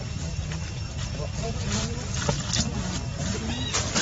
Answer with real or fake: real